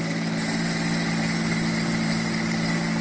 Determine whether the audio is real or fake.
real